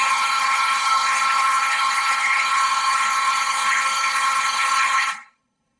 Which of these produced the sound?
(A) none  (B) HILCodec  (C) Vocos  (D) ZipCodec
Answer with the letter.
B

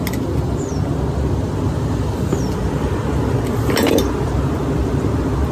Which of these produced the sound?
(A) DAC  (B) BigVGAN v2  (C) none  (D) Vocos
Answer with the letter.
C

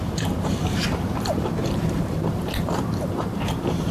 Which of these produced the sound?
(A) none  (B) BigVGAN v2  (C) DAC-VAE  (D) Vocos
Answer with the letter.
B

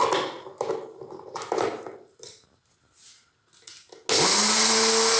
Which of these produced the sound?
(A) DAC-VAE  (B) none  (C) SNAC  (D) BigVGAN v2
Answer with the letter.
B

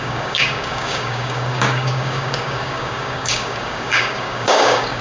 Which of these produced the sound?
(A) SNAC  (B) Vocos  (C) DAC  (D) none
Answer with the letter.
C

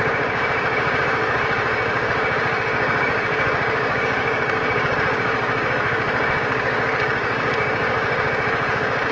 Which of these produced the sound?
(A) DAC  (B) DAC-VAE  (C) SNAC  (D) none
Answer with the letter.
A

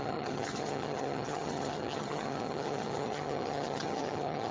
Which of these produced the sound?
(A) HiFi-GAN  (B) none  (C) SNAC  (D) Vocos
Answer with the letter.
A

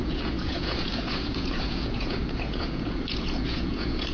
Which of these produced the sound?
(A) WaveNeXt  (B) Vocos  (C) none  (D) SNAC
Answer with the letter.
B